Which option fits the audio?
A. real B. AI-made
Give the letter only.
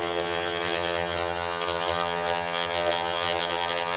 B